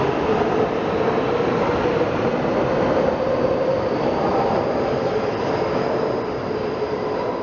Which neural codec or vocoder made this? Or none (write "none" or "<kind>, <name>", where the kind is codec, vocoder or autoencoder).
vocoder, BigVGAN v2